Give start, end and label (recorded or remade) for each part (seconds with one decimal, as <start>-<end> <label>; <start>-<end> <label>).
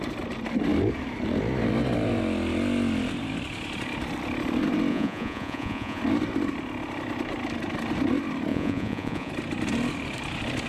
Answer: 0.0-4.9 recorded; 4.9-6.0 remade; 6.0-8.5 recorded; 8.5-9.3 remade; 9.3-10.7 recorded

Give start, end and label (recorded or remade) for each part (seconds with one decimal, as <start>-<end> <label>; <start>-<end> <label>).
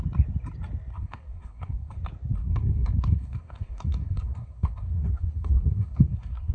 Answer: 0.0-0.9 recorded; 0.9-1.9 remade; 1.9-2.4 recorded; 2.4-6.5 remade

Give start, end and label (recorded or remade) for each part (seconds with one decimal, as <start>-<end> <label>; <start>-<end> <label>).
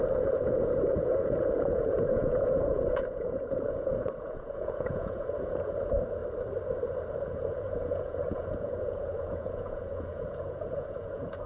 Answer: 0.0-6.2 remade; 6.2-7.1 recorded; 7.1-11.5 remade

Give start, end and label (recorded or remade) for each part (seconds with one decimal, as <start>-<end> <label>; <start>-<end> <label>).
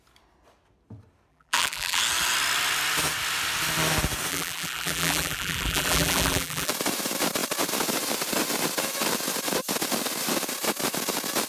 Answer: 0.0-1.3 recorded; 1.3-2.0 remade; 2.0-4.3 recorded; 4.3-6.7 remade; 6.7-11.5 recorded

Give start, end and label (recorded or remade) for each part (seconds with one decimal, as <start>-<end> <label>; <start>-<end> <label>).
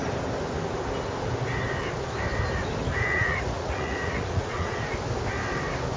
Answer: 0.0-2.9 recorded; 2.9-4.9 remade; 4.9-6.0 recorded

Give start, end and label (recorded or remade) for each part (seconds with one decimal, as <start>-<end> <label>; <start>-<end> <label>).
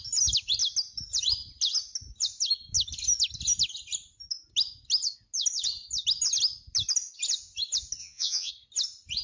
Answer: 0.0-8.0 recorded; 8.0-8.5 remade; 8.5-9.2 recorded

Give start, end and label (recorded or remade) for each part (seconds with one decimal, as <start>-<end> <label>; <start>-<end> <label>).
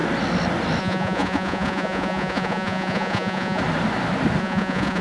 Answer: 0.0-0.8 recorded; 0.8-3.6 remade; 3.6-4.4 recorded; 4.4-5.0 remade